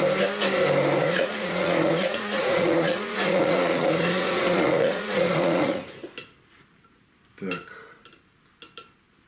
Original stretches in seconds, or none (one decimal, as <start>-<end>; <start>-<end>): 0.0-1.0; 6.0-9.3